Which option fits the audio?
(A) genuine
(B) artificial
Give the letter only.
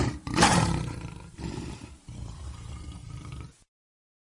B